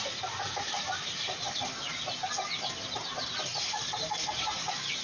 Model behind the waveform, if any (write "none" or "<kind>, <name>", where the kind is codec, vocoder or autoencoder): none